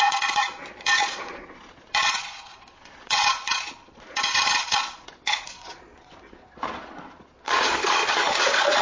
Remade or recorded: remade